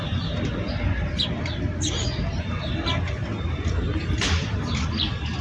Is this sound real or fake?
fake